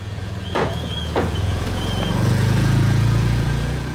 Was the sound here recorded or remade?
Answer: remade